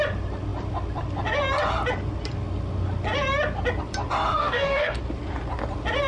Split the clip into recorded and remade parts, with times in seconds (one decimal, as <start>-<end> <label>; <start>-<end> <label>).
0.0-4.4 recorded; 4.4-5.0 remade; 5.0-6.1 recorded